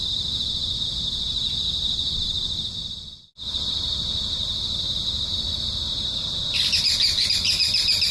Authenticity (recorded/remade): recorded